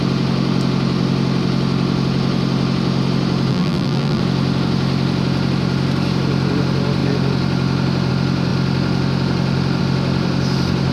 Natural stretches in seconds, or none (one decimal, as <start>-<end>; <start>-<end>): 0.0-3.5; 4.2-10.9